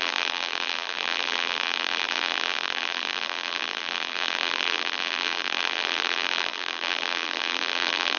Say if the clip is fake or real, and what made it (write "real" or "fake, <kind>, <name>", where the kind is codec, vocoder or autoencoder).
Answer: fake, vocoder, BigVGAN v2